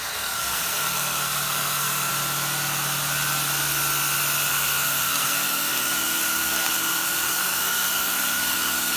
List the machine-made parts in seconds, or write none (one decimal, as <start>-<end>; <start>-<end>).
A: 0.0-2.1; 4.5-9.0